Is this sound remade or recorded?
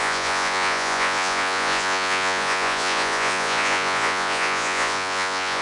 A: remade